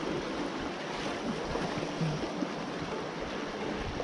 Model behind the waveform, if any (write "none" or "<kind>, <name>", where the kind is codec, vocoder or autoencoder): none